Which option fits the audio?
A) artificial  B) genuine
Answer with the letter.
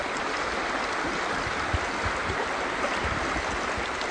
B